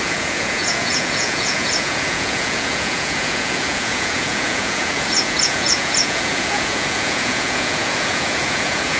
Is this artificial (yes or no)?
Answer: yes